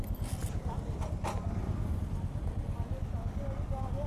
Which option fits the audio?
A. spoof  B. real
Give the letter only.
B